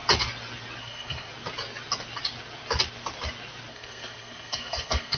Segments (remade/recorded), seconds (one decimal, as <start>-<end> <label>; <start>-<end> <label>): 0.0-0.8 recorded; 0.8-1.3 remade; 1.3-3.7 recorded; 3.7-5.2 remade